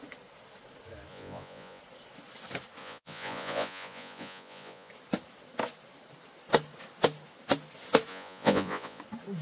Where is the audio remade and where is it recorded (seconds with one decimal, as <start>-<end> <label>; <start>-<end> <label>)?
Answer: 0.0-1.1 recorded; 1.1-1.8 remade; 1.8-2.8 recorded; 2.8-4.9 remade; 4.9-8.1 recorded; 8.1-9.0 remade; 9.0-9.4 recorded